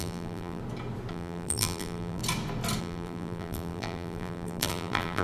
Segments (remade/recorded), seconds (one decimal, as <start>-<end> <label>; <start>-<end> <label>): 0.0-0.6 remade; 0.6-1.1 recorded; 1.1-2.2 remade; 2.2-2.8 recorded; 2.8-5.2 remade